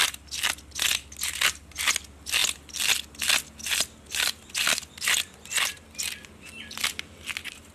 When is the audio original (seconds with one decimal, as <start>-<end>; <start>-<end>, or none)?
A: 0.0-7.7